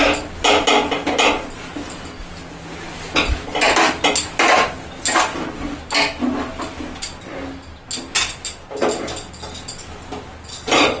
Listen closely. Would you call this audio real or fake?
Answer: real